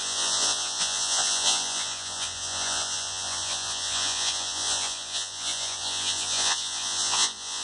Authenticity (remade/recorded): remade